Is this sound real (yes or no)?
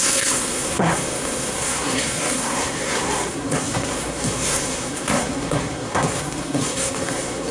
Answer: no